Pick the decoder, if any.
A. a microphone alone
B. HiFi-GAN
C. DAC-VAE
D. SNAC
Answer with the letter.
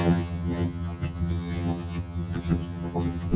B